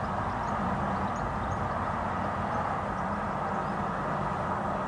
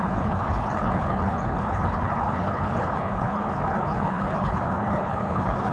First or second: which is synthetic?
second